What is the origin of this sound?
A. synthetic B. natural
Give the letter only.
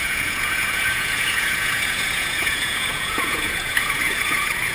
A